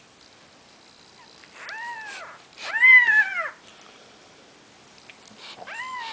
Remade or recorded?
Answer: recorded